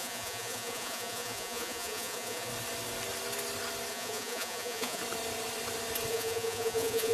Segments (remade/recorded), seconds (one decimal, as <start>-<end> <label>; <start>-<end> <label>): 0.0-2.5 remade; 2.5-3.9 recorded; 3.9-5.0 remade; 5.0-6.1 recorded; 6.1-7.1 remade